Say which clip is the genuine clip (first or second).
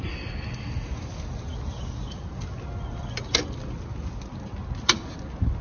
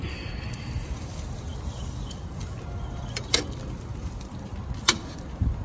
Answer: first